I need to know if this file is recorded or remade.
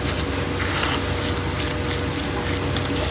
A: recorded